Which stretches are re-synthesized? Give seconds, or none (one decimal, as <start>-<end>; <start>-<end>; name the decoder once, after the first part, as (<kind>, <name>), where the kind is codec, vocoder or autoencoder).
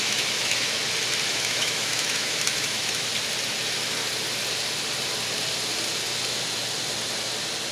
0.0-0.8 (autoencoder, DAC-VAE); 1.3-3.1